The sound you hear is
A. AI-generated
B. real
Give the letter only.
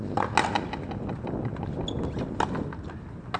B